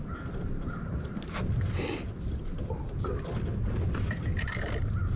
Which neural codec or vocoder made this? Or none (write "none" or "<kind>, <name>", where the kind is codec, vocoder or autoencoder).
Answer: none